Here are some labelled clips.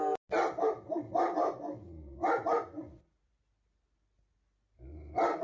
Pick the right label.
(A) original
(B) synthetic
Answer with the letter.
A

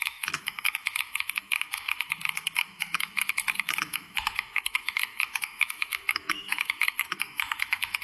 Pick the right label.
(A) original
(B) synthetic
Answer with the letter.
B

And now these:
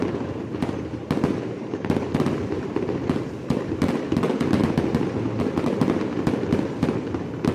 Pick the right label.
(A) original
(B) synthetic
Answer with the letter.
A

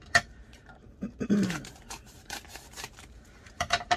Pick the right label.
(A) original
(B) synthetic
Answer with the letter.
B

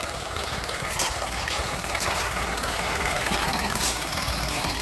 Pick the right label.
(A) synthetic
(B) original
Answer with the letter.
A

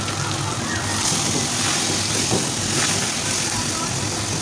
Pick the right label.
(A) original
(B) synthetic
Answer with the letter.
A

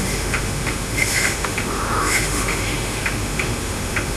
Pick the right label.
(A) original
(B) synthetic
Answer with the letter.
B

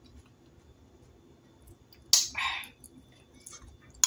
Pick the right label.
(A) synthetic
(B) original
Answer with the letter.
B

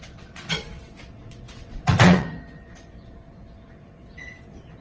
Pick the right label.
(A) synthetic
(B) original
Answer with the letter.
A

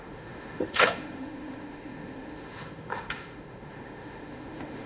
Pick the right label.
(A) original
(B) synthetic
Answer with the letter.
B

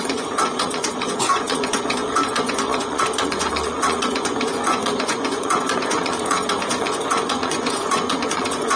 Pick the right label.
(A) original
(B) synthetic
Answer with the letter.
B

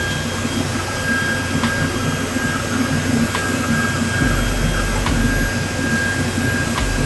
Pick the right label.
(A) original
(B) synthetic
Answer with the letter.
A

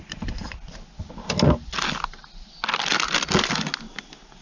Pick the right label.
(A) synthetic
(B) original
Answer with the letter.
B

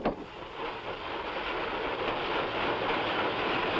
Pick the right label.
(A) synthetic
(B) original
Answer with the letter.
B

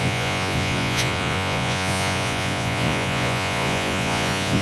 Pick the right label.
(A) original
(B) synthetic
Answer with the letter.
B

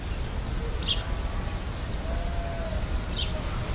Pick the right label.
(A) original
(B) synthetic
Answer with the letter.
A